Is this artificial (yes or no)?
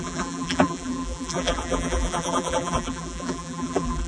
yes